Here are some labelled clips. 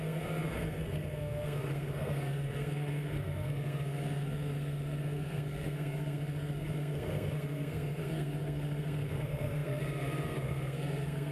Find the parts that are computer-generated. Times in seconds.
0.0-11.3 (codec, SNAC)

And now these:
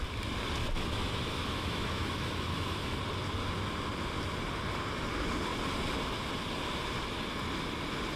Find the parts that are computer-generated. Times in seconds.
0.6-3.0 (autoencoder, DAC-VAE)